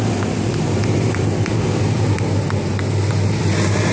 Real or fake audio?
real